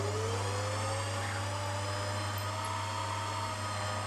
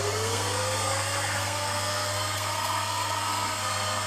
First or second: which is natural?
first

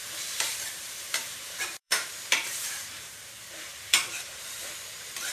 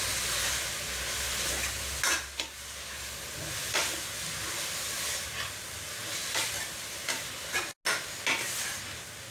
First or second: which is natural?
second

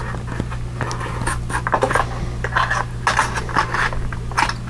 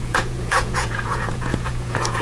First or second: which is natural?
first